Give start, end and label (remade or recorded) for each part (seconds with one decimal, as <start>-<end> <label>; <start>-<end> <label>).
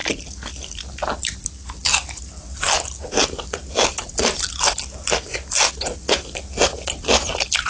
0.0-7.7 recorded